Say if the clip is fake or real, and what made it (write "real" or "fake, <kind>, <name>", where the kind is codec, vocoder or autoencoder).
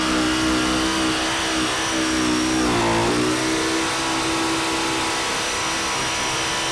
real